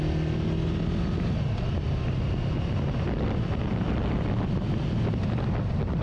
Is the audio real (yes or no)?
yes